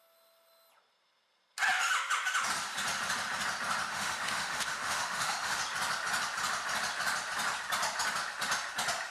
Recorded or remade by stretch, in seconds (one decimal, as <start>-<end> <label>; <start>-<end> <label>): 0.0-3.9 recorded; 3.9-5.6 remade; 5.6-9.1 recorded